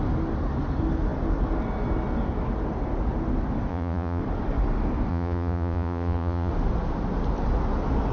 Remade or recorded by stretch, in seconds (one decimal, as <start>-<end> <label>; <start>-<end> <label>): 0.0-3.7 recorded; 3.7-4.2 remade; 4.2-5.1 recorded; 5.1-6.5 remade; 6.5-8.1 recorded